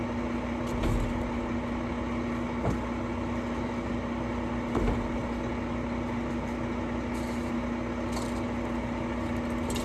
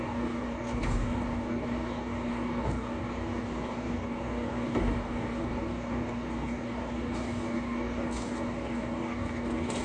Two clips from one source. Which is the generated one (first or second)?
second